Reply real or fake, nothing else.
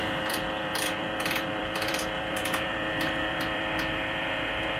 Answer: fake